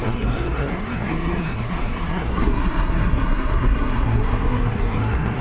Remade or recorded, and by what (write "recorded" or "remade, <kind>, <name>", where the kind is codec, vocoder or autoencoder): remade, codec, SNAC